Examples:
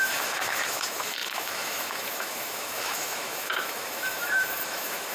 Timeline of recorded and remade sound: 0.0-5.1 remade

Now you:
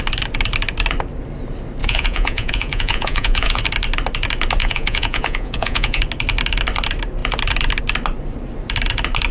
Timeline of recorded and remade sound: 0.0-1.8 recorded; 1.8-3.6 remade; 3.6-4.6 recorded; 4.6-6.0 remade; 6.0-9.3 recorded